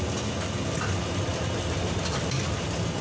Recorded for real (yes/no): yes